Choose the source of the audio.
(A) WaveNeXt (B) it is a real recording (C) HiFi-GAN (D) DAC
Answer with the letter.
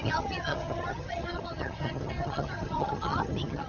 C